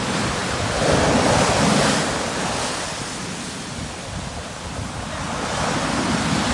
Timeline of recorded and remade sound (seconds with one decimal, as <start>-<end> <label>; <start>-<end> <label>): 0.0-6.5 recorded